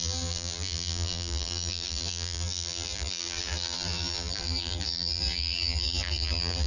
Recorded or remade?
remade